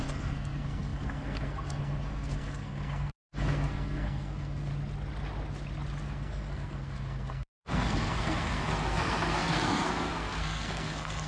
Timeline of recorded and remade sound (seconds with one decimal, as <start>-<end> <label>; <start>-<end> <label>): 0.0-4.7 remade; 4.7-6.0 recorded; 6.0-11.3 remade